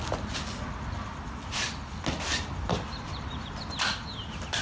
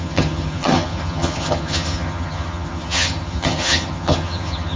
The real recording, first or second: first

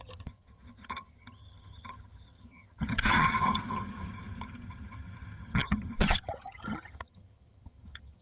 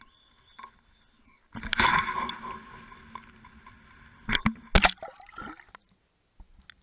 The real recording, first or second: second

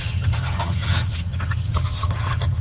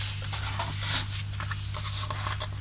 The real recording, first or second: second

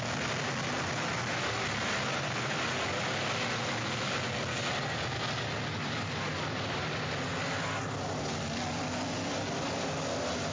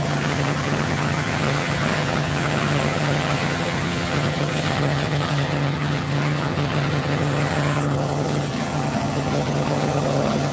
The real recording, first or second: first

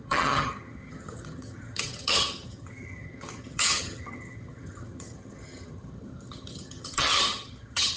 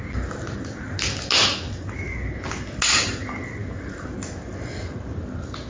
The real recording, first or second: second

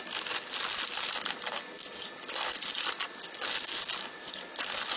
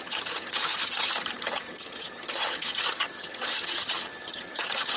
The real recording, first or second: first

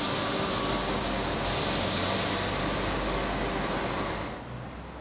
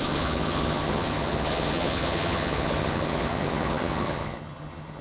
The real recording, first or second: first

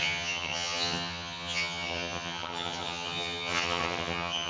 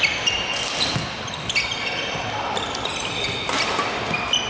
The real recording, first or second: second